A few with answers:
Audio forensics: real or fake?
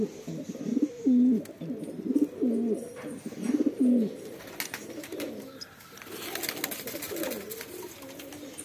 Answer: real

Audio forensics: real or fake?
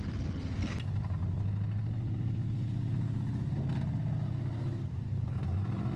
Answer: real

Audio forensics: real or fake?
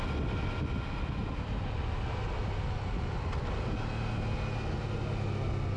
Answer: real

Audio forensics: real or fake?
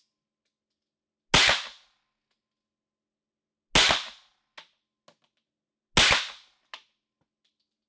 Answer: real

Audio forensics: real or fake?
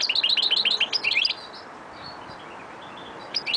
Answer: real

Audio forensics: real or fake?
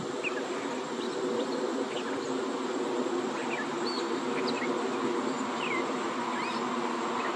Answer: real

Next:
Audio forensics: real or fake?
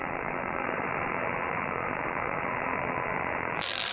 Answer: fake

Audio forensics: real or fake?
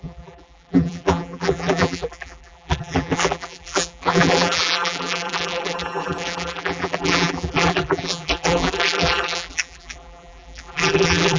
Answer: fake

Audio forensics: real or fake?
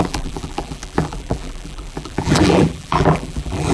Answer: fake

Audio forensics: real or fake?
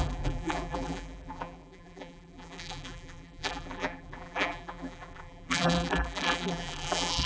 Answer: fake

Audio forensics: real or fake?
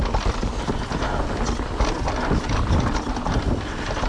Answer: real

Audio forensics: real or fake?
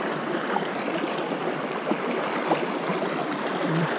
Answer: fake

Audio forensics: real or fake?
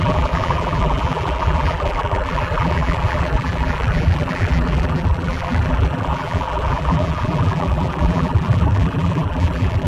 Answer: fake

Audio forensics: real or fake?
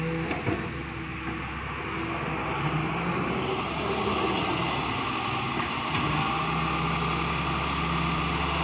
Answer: real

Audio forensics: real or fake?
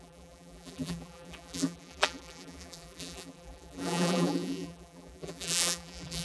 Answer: fake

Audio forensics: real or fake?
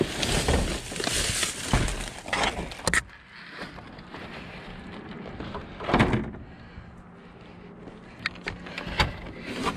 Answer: real